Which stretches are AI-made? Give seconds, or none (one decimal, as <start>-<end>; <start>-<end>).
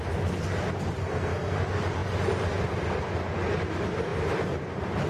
1.0-1.6